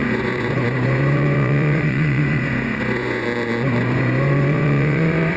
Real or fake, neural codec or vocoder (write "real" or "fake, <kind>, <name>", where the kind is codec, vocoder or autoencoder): fake, vocoder, Vocos